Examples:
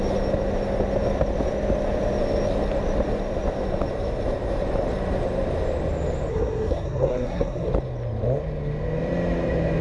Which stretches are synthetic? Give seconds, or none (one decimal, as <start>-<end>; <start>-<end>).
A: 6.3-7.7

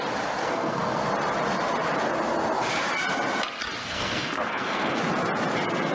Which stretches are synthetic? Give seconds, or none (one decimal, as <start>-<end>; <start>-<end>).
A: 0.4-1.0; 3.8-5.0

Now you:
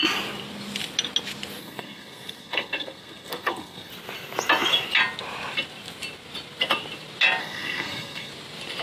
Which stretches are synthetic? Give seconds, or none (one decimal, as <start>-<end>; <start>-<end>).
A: 1.6-3.9; 7.4-8.3

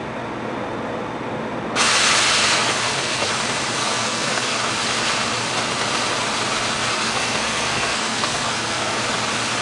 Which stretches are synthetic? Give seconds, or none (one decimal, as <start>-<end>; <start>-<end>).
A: 2.4-3.3; 3.8-4.6; 6.9-9.0